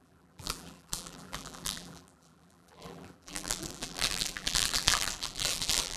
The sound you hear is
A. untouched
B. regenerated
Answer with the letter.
B